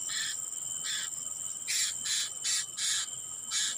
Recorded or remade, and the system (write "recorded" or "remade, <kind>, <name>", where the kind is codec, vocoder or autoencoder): recorded